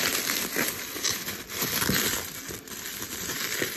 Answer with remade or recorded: recorded